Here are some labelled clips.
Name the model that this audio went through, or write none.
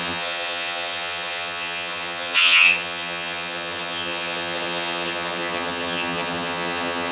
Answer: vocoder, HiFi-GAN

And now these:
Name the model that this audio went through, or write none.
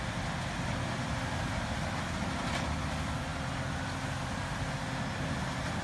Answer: none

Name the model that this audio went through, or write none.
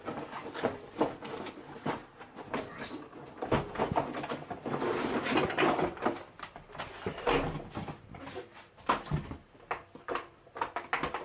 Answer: none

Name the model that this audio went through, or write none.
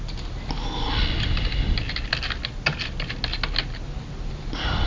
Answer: none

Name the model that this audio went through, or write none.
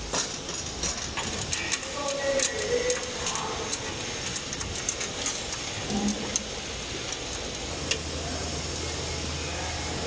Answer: none